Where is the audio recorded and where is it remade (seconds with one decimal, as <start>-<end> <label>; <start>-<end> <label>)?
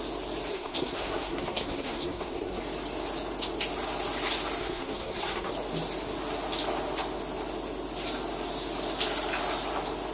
0.0-0.5 recorded; 0.5-2.6 remade; 2.6-4.6 recorded; 4.6-5.5 remade; 5.5-10.1 recorded